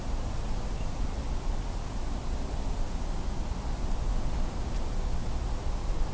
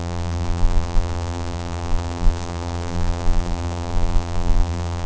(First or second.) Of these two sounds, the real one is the first